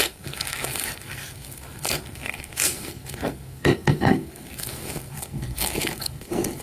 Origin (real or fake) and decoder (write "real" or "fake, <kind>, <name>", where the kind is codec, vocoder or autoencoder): fake, codec, SNAC